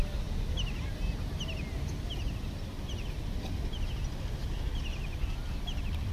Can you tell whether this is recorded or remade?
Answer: recorded